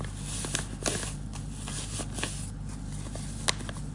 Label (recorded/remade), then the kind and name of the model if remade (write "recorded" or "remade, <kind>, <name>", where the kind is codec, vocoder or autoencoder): recorded